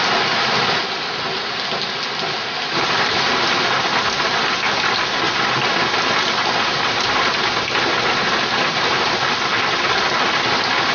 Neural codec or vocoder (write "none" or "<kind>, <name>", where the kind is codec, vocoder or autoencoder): none